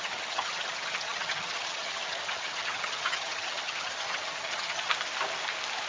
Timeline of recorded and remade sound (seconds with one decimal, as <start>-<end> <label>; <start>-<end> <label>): 0.0-4.9 remade; 4.9-5.9 recorded